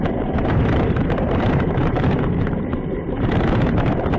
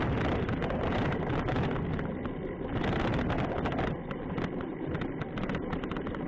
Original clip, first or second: second